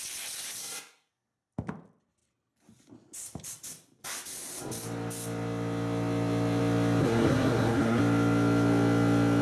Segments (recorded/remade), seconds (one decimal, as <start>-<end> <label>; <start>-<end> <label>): 0.0-0.6 recorded; 0.6-1.1 remade; 1.1-7.0 recorded; 7.0-8.0 remade; 8.0-9.4 recorded